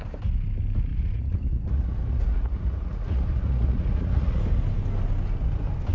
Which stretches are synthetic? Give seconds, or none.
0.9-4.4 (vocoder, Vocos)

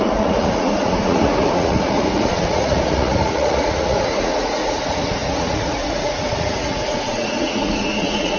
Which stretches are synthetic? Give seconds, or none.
0.0-8.4 (vocoder, Vocos)

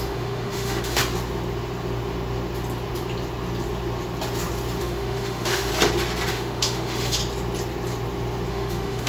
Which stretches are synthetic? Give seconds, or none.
0.0-1.0 (autoencoder, DAC-VAE); 4.8-5.7; 6.3-7.2; 8.5-9.1

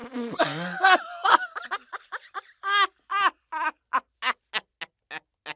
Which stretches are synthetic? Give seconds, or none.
none

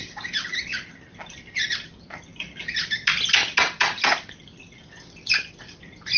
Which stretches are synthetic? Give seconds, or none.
none

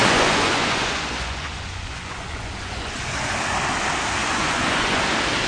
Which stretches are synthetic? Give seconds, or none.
0.0-3.3 (vocoder, Vocos); 4.2-5.0